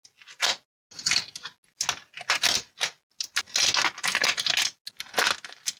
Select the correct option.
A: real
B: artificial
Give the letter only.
A